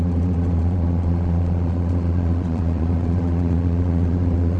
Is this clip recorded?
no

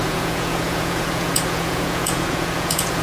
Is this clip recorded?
no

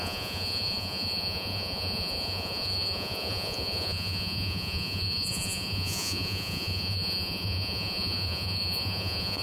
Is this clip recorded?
no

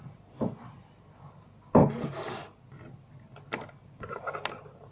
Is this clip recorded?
yes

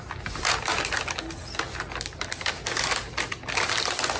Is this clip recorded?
yes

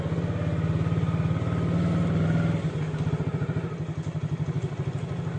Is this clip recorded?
yes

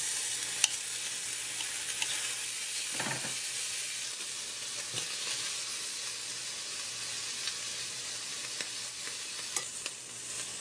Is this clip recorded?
yes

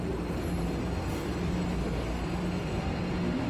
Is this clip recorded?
yes